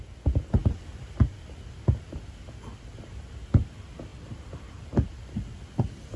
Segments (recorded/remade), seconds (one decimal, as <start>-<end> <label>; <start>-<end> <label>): 0.0-0.6 recorded; 0.6-1.2 remade; 1.2-4.1 recorded; 4.1-5.1 remade; 5.1-6.2 recorded